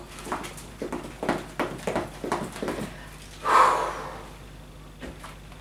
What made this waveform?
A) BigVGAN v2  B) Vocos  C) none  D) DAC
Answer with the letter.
C